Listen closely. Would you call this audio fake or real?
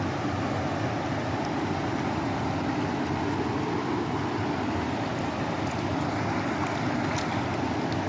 real